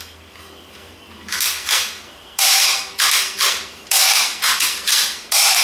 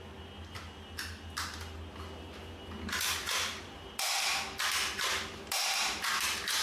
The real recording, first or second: second